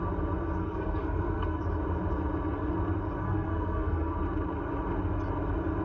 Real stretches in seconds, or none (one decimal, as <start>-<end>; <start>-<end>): 0.0-0.6; 1.6-3.2; 4.2-5.8